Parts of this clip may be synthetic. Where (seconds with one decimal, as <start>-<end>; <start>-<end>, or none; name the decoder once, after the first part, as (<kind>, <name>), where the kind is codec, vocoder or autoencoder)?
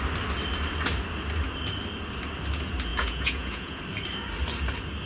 2.9-3.8 (vocoder, Vocos)